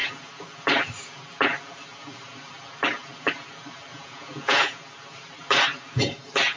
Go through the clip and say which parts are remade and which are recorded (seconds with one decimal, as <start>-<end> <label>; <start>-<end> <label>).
0.0-3.9 recorded; 3.9-4.8 remade; 4.8-6.6 recorded